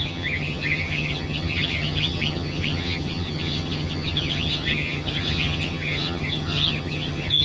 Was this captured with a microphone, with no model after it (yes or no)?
no